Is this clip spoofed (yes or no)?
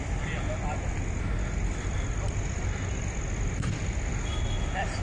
no